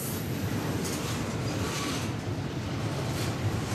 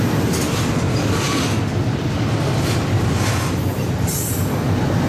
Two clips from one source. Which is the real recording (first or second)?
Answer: second